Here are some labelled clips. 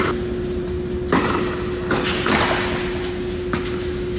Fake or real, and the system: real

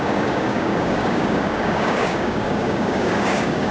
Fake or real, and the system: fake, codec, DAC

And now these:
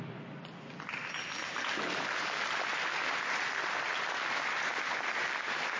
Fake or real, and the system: real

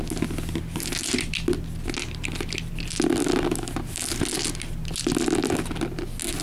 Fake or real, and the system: real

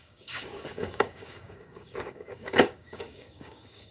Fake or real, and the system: fake, codec, DAC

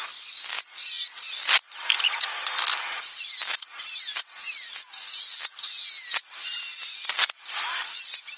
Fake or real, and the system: real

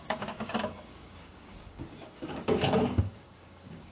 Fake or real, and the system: fake, codec, DAC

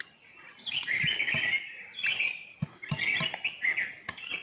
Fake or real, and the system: real